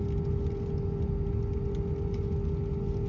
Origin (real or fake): real